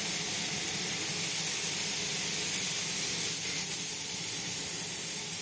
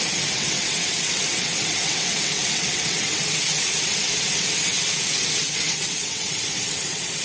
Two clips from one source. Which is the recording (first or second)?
first